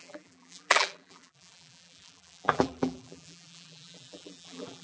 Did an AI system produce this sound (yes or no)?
yes